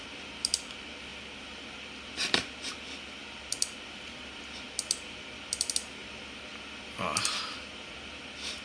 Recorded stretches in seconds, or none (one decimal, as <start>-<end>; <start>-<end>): 0.0-8.6